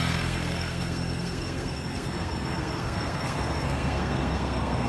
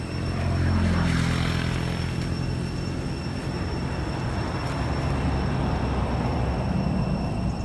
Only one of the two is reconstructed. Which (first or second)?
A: first